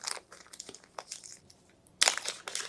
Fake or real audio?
real